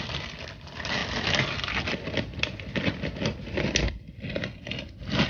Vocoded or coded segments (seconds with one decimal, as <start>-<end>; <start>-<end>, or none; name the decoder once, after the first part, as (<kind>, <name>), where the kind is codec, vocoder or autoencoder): none